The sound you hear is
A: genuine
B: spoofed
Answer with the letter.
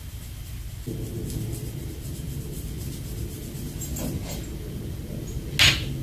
A